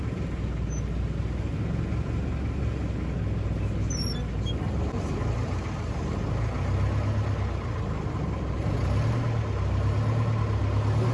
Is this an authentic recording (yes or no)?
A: yes